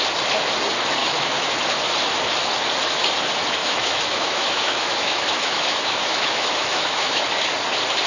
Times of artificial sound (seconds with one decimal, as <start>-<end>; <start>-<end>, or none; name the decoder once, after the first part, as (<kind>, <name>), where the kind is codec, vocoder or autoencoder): 1.0-1.5 (autoencoder, DAC-VAE); 3.6-7.2